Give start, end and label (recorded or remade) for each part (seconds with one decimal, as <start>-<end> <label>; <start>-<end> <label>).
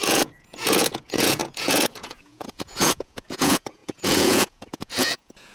0.0-5.5 remade